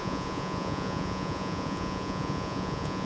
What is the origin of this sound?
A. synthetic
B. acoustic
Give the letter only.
A